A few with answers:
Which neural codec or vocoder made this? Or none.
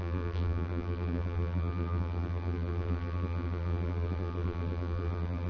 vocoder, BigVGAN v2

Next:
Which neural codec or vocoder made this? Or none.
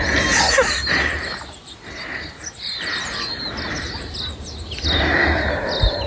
none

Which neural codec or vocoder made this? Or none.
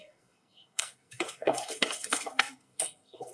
codec, SNAC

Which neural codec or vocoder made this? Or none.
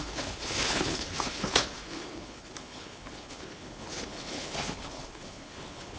codec, HILCodec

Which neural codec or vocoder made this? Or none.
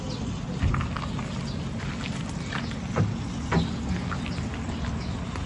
none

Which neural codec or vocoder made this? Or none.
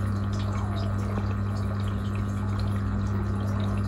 none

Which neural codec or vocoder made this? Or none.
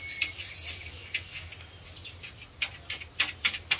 none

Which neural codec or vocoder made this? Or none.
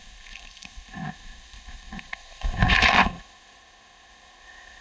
codec, ZipCodec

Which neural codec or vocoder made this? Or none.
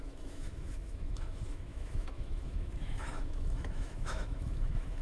autoencoder, DAC-VAE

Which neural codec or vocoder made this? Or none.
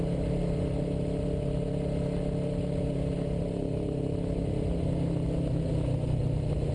none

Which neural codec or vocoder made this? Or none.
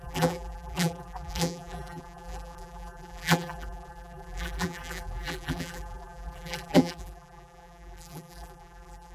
vocoder, BigVGAN v2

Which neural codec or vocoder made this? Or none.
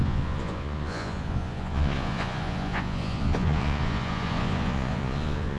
vocoder, Vocos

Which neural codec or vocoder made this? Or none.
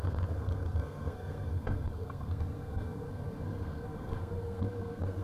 codec, SNAC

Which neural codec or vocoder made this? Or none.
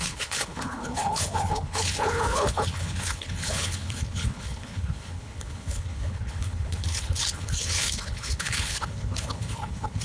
codec, HILCodec